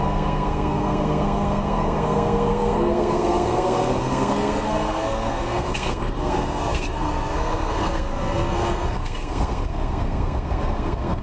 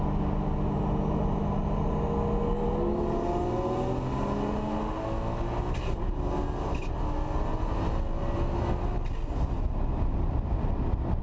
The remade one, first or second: first